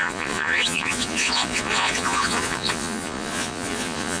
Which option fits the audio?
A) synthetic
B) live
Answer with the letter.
A